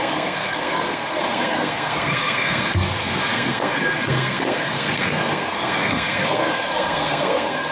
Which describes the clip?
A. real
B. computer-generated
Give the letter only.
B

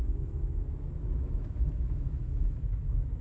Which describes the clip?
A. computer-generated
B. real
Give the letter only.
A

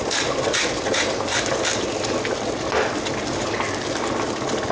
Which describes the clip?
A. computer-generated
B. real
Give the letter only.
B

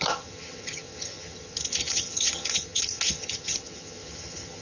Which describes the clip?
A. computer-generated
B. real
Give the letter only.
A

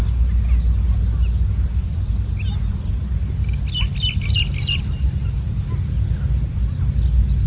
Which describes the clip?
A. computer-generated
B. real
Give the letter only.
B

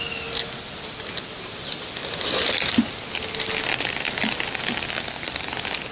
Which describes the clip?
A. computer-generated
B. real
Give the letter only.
B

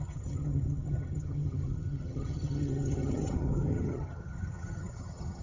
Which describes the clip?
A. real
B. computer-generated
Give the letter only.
B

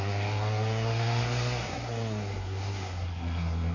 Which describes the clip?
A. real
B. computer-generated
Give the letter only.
B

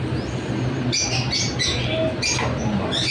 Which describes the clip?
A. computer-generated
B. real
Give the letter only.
B